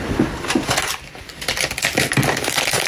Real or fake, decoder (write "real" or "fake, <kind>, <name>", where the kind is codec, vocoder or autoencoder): fake, vocoder, BigVGAN v2